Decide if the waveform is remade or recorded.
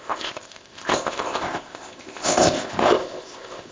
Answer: remade